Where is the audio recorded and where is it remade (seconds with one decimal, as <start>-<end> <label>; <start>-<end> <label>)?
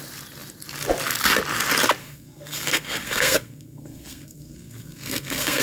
0.0-2.0 recorded; 2.0-5.6 remade